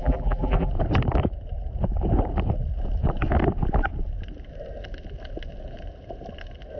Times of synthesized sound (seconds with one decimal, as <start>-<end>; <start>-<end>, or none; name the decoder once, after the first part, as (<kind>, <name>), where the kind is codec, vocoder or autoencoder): 0.0-0.7 (vocoder, BigVGAN v2)